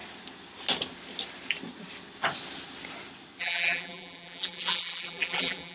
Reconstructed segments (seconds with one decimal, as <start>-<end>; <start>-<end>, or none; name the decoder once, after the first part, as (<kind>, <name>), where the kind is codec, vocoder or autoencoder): 3.4-5.7 (vocoder, BigVGAN v2)